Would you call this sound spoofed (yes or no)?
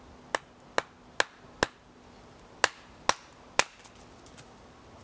no